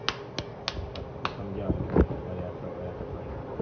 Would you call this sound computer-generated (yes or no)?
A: no